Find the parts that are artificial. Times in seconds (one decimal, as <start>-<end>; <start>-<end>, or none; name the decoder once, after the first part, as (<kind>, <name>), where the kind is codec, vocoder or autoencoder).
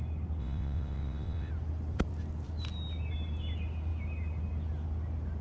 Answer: 0.4-1.5 (vocoder, WaveNeXt)